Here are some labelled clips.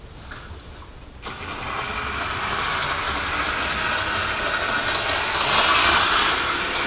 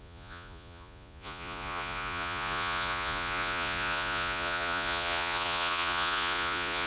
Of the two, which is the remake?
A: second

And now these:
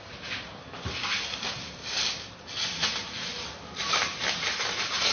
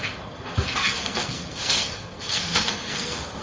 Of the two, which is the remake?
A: second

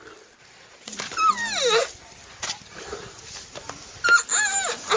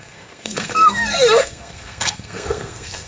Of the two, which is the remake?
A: second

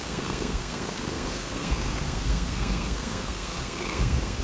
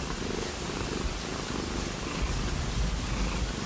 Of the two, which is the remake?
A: first